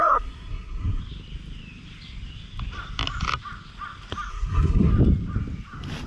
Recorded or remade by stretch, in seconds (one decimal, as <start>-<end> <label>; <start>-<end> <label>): 0.0-1.0 remade; 1.0-4.3 recorded; 4.3-4.9 remade; 4.9-6.1 recorded